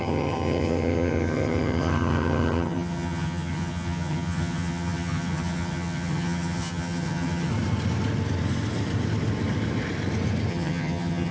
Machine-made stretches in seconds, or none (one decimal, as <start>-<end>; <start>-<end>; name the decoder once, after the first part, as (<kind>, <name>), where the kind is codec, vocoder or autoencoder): 0.0-7.5 (vocoder, HiFi-GAN); 10.5-11.3